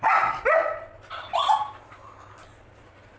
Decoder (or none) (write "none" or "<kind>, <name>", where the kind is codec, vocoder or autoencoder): none